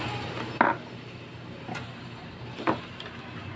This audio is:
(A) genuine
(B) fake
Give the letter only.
A